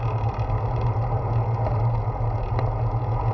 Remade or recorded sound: recorded